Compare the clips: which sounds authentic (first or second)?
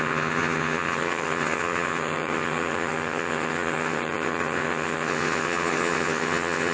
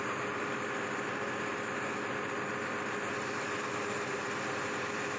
second